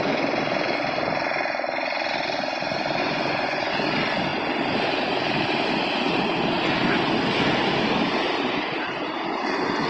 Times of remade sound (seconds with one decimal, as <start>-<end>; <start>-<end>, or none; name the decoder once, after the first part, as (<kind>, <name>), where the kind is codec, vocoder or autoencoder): 3.0-3.7 (vocoder, Vocos)